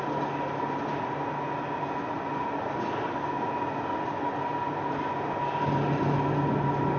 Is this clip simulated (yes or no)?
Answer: no